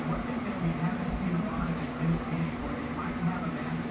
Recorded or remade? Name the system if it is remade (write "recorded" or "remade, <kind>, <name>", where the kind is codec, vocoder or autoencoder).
remade, vocoder, BigVGAN v2